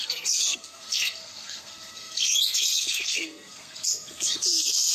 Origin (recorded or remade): remade